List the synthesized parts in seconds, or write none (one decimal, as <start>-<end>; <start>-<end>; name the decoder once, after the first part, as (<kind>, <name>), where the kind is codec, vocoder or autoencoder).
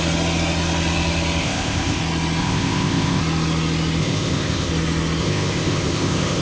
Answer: 1.4-2.0 (codec, ZipCodec); 2.4-3.2; 4.0-4.7; 5.2-6.4